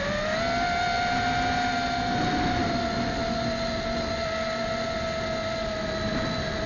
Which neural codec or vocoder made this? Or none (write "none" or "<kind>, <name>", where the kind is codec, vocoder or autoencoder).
none